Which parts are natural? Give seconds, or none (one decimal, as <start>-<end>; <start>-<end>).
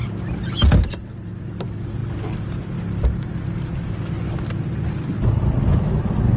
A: 0.0-6.4